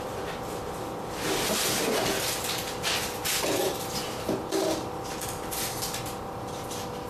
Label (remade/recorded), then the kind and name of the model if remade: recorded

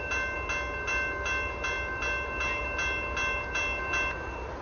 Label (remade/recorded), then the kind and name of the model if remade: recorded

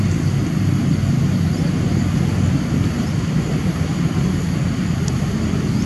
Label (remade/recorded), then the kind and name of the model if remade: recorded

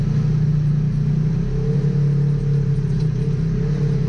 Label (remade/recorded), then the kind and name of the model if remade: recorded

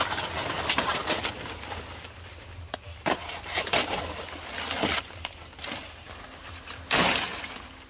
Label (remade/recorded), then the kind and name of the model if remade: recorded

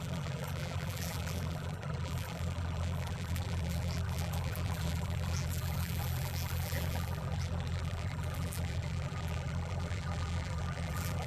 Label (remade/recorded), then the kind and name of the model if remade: remade, vocoder, BigVGAN v2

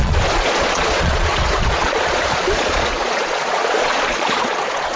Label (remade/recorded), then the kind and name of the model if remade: remade, vocoder, Vocos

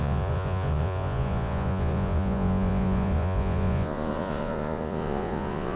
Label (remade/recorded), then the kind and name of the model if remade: remade, vocoder, Vocos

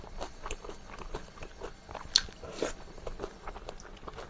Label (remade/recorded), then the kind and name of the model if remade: recorded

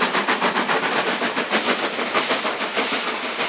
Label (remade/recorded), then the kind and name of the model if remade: recorded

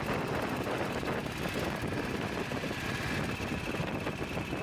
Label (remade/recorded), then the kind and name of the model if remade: recorded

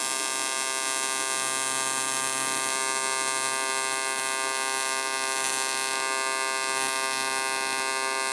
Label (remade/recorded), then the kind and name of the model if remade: recorded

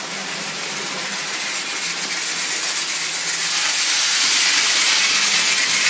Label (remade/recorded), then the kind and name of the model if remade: recorded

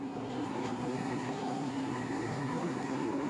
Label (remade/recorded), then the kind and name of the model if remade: remade, codec, SNAC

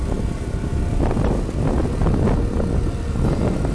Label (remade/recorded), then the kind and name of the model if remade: recorded